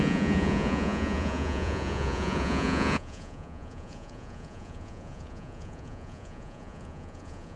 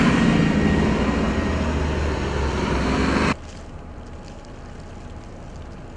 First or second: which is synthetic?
first